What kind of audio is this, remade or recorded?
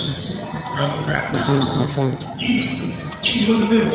remade